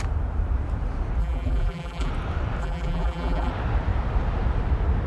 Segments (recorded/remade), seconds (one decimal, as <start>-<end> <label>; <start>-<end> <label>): 0.0-1.2 recorded; 1.2-2.1 remade; 2.1-2.6 recorded; 2.6-3.5 remade; 3.5-5.1 recorded